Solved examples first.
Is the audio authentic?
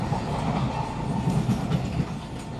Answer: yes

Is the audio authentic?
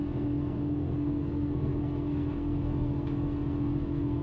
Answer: no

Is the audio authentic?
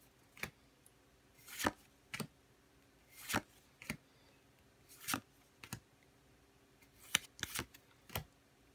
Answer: yes